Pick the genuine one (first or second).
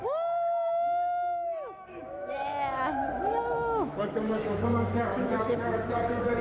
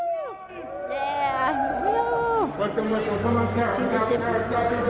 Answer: second